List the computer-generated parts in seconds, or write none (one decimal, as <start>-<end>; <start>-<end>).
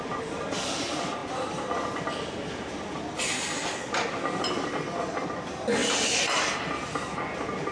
none